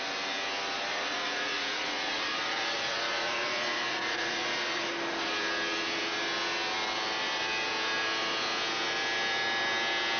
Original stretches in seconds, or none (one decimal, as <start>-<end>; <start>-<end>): 0.0-0.9; 4.8-10.2